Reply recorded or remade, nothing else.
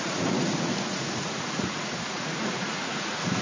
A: remade